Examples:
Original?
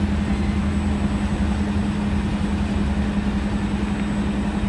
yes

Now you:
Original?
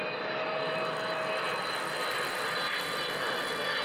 yes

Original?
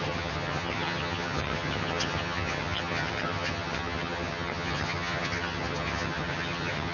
no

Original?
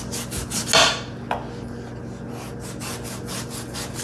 yes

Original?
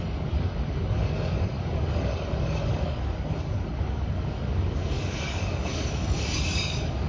no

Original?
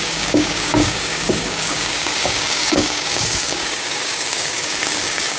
no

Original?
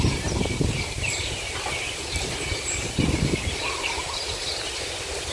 no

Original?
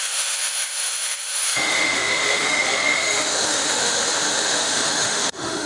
no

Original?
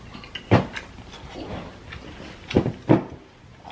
yes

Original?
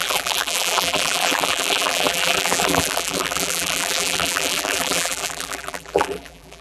no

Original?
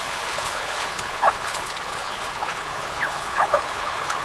no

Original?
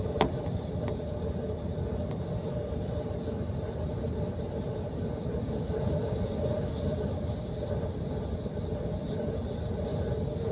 yes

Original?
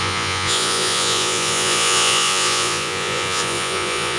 no